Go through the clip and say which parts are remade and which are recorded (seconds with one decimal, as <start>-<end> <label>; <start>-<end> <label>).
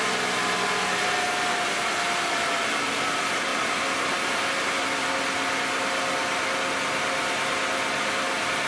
0.0-8.7 recorded